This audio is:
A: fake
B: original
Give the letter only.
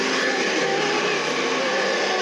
B